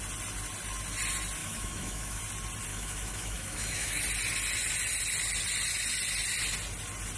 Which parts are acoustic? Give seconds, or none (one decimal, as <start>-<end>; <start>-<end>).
0.0-1.4; 2.2-2.7; 4.0-7.2